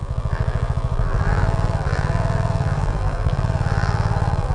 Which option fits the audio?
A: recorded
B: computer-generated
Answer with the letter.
B